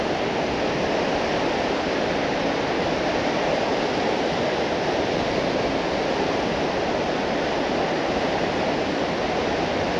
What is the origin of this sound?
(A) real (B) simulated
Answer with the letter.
A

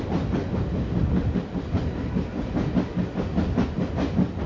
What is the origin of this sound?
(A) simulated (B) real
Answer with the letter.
B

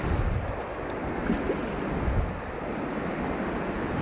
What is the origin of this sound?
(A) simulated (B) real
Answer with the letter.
B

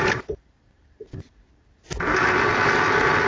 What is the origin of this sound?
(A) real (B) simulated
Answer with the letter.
A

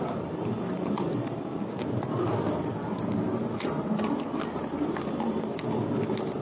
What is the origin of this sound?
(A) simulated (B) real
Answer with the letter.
B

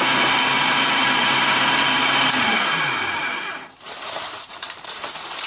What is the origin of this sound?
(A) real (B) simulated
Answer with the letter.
B